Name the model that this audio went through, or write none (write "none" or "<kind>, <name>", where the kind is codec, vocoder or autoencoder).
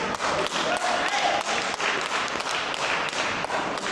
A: none